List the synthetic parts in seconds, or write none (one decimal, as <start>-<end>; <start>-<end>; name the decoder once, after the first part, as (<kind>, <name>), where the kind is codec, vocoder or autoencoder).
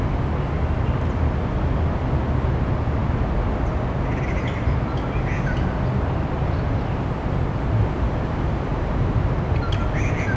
none